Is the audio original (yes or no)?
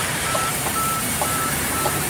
no